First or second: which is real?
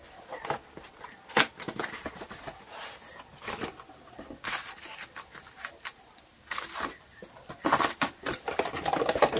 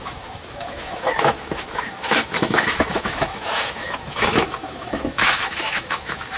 first